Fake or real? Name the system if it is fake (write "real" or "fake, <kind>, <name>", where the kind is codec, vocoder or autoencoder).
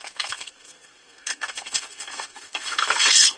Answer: fake, codec, SNAC